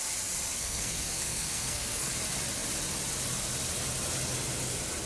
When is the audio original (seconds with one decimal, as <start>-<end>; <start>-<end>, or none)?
0.0-0.5; 2.1-5.1